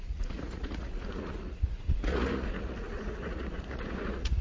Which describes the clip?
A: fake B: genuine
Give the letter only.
A